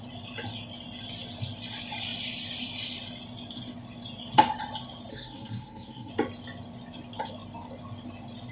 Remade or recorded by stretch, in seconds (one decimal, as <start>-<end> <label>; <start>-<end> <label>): 0.0-5.1 recorded; 5.1-6.1 remade; 6.1-8.5 recorded